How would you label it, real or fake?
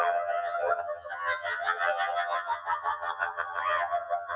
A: fake